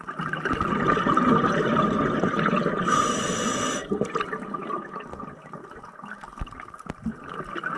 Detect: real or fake real